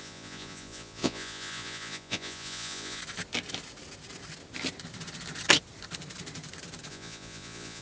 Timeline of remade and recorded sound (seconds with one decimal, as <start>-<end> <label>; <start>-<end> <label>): 0.0-3.0 remade; 3.0-6.9 recorded; 6.9-7.8 remade